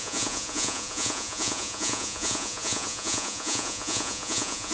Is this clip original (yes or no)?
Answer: no